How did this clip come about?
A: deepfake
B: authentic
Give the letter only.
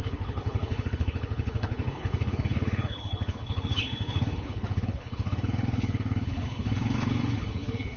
A